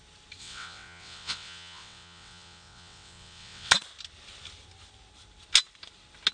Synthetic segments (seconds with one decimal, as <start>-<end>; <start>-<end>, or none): 0.4-3.7